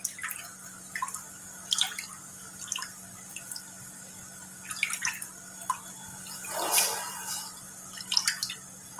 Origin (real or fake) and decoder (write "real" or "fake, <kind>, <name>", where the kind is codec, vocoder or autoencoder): real